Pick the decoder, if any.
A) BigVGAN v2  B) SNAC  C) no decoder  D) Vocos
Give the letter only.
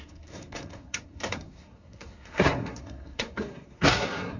B